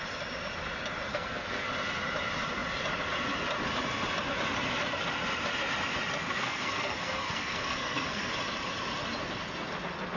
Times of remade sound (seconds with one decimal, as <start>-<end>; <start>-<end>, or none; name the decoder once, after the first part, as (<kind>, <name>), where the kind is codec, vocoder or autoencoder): 1.1-1.7 (codec, SNAC); 6.2-8.3